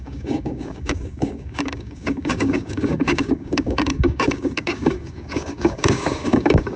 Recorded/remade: remade